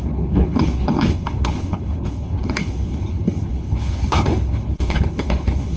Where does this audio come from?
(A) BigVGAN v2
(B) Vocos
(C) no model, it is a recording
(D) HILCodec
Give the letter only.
D